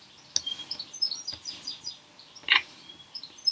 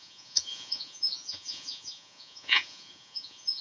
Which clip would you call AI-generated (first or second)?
second